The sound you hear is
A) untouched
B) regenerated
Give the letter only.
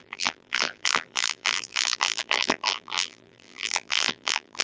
B